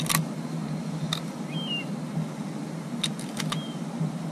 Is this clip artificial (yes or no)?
no